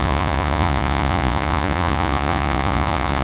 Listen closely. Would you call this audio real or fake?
fake